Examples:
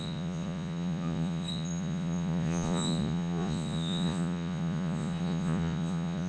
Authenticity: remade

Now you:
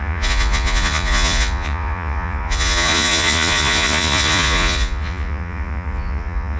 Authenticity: remade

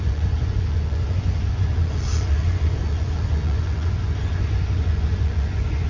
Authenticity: remade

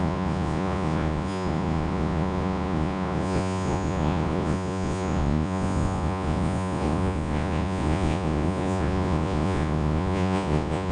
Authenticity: remade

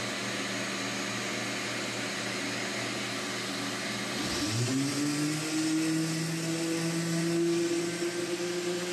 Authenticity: recorded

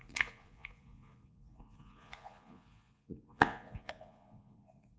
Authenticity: remade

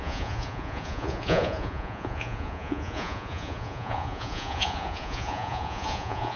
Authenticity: remade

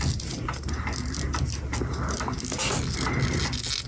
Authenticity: recorded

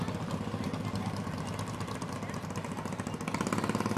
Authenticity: recorded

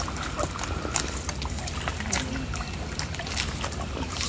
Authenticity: recorded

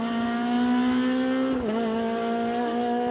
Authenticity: recorded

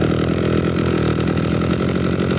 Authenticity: recorded